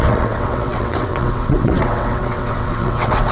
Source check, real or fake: fake